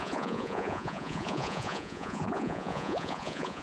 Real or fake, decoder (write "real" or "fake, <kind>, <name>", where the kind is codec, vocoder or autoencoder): fake, vocoder, Vocos